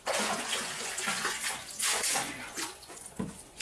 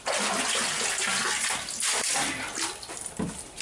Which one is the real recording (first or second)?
second